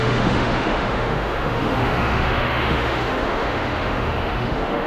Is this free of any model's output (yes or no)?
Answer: no